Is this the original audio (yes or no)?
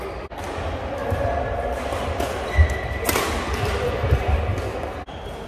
yes